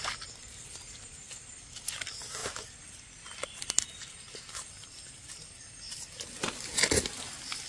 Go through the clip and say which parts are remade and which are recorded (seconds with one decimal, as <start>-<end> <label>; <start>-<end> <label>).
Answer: 0.0-7.7 recorded